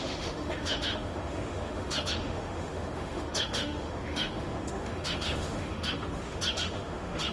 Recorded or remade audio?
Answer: remade